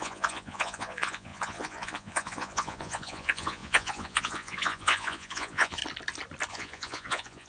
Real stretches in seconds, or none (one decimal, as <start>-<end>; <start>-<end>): 5.8-6.5